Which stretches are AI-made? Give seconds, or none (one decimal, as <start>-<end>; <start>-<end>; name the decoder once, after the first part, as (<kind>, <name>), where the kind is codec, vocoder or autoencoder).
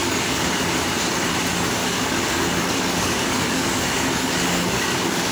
0.0-0.6 (codec, DAC); 1.8-5.3